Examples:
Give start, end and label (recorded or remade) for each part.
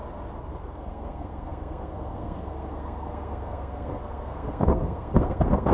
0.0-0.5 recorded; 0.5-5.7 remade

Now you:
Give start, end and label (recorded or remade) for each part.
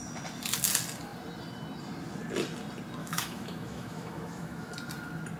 0.0-3.0 recorded; 3.0-4.7 remade; 4.7-5.4 recorded